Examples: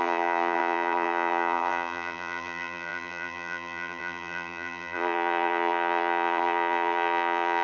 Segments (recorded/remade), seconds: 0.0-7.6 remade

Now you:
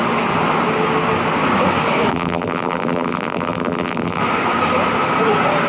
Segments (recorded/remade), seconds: 0.0-2.1 recorded; 2.1-4.2 remade; 4.2-5.7 recorded